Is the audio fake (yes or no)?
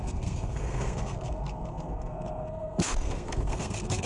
yes